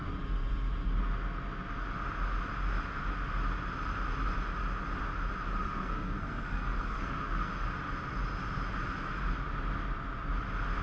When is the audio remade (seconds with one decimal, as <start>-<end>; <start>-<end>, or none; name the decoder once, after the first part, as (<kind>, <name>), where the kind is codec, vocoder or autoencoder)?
5.6-7.5 (codec, SNAC)